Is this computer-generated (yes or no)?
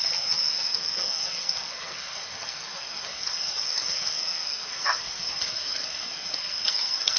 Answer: yes